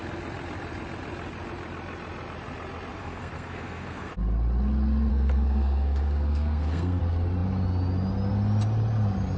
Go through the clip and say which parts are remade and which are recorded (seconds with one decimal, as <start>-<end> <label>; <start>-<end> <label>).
0.0-2.9 recorded; 2.9-4.1 remade; 4.1-5.1 recorded; 5.1-7.0 remade; 7.0-9.4 recorded